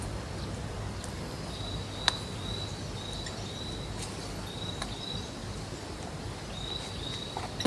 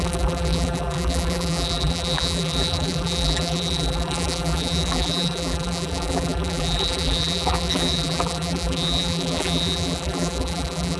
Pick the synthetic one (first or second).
second